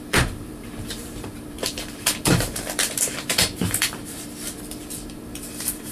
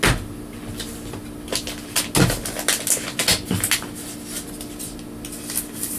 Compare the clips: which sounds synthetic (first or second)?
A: first